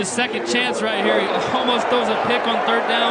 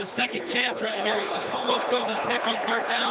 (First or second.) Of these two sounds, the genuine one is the first